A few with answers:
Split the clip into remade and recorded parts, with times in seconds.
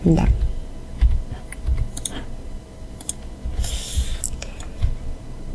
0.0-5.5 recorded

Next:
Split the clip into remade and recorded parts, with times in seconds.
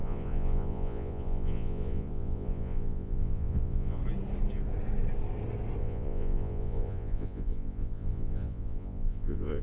0.0-4.0 remade; 4.0-5.8 recorded; 5.8-9.6 remade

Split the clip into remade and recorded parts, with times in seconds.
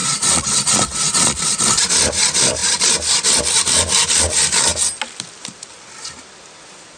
0.0-1.6 remade; 1.6-7.0 recorded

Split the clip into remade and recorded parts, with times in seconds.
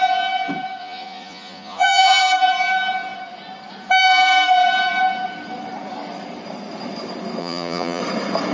0.0-0.8 recorded; 0.8-2.2 remade; 2.2-7.4 recorded; 7.4-8.0 remade; 8.0-8.5 recorded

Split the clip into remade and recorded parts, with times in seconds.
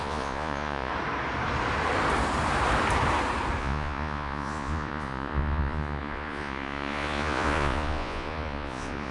0.0-0.9 remade; 0.9-3.6 recorded; 3.6-9.1 remade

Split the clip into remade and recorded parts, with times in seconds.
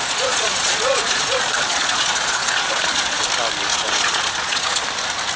0.0-3.2 remade; 3.2-3.7 recorded; 3.7-4.9 remade; 4.9-5.4 recorded